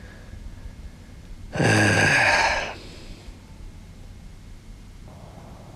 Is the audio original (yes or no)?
yes